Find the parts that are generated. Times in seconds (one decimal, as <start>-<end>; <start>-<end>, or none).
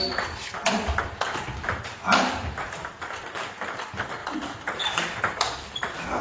none